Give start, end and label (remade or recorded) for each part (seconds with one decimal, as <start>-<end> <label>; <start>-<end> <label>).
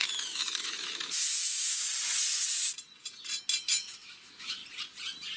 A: 0.0-1.8 remade; 1.8-3.6 recorded; 3.6-4.6 remade; 4.6-5.4 recorded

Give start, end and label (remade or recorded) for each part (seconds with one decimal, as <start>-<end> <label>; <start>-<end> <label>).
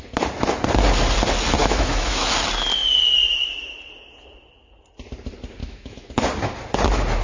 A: 0.0-1.6 recorded; 1.6-2.3 remade; 2.3-5.6 recorded; 5.6-6.1 remade; 6.1-7.2 recorded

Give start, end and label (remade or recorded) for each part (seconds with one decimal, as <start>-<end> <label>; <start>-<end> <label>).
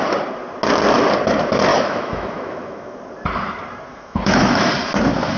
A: 0.0-1.7 recorded; 1.7-3.0 remade; 3.0-3.9 recorded; 3.9-4.7 remade; 4.7-5.4 recorded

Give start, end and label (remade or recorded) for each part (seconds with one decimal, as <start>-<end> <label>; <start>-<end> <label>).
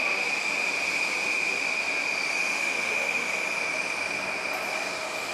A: 0.0-2.5 recorded; 2.5-3.3 remade; 3.3-5.3 recorded